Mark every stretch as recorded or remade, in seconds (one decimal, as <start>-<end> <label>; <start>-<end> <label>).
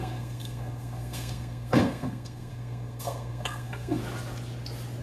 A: 0.0-4.0 remade; 4.0-5.0 recorded